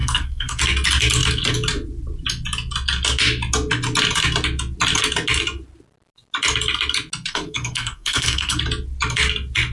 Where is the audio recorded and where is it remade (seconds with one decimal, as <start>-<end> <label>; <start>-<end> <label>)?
0.0-0.6 remade; 0.6-7.3 recorded; 7.3-8.6 remade; 8.6-9.7 recorded